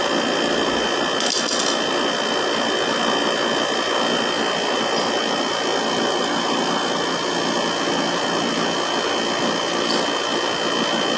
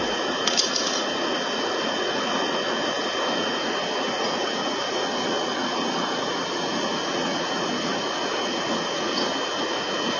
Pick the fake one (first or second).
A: second